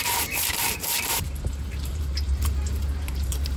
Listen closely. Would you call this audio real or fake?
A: fake